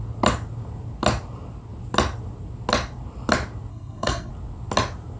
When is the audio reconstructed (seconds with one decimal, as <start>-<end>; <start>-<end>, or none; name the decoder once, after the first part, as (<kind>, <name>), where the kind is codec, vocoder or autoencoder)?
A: 3.7-4.3 (codec, SNAC)